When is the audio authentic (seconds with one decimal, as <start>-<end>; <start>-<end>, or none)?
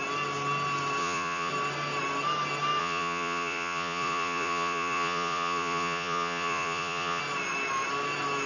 0.0-1.0; 1.5-2.8; 7.2-8.5